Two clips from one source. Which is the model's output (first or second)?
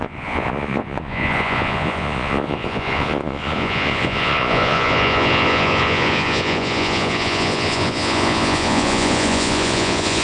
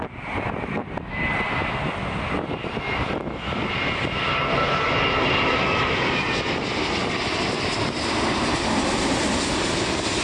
first